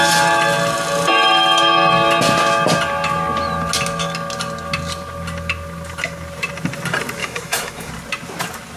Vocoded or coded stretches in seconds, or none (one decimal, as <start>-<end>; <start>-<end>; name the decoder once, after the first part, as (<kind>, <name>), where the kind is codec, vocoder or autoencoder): 7.2-7.9 (autoencoder, DAC-VAE)